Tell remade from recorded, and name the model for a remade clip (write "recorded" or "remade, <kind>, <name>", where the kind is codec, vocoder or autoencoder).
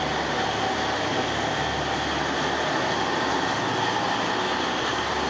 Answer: recorded